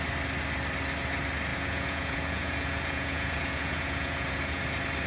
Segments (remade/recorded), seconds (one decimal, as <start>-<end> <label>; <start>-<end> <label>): 0.0-1.5 recorded; 1.5-4.6 remade; 4.6-5.1 recorded